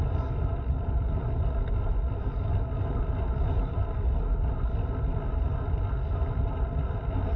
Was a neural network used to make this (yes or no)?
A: no